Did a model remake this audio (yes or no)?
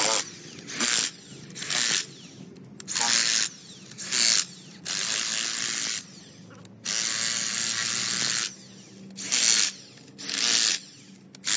no